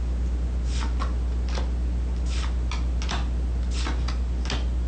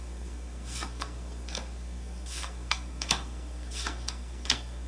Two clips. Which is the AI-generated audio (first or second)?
second